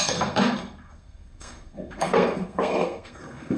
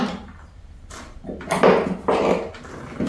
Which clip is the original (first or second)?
second